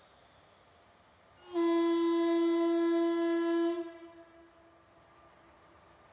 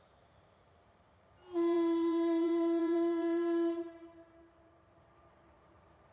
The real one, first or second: first